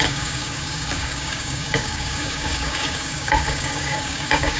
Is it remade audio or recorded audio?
remade